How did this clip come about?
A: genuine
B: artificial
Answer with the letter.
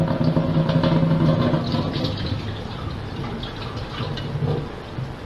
A